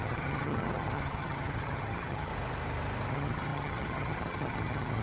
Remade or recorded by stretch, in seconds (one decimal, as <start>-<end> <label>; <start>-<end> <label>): 0.0-2.3 remade; 2.3-3.1 recorded; 3.1-5.0 remade